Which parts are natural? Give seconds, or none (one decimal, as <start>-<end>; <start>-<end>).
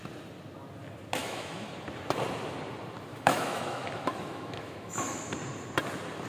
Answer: 0.0-1.2; 1.7-3.1; 5.3-6.3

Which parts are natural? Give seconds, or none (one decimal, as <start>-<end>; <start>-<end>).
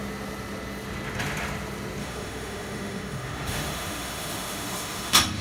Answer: 0.0-2.0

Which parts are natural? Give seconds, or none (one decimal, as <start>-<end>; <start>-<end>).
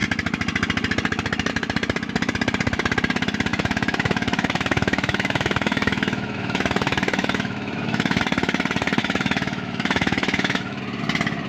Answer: 0.0-3.5; 8.2-9.0; 10.8-11.5